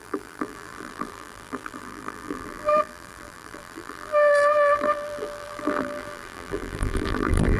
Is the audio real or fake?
fake